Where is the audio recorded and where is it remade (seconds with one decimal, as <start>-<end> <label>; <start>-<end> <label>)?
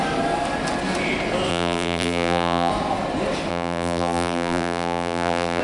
0.0-1.5 recorded; 1.5-2.7 remade; 2.7-3.5 recorded; 3.5-5.6 remade